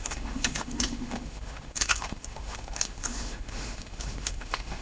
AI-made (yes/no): yes